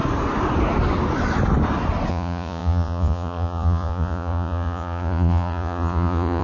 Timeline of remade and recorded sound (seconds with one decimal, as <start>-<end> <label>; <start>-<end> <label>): 0.0-2.1 recorded; 2.1-6.4 remade